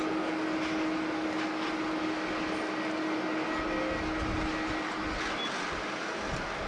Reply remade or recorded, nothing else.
recorded